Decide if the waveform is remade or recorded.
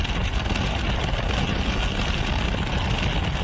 recorded